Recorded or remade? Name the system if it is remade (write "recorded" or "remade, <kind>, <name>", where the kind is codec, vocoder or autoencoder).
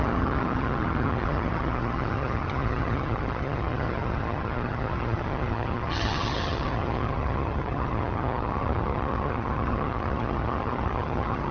remade, vocoder, HiFi-GAN